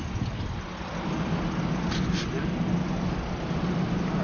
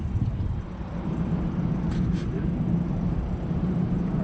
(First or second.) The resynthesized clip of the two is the second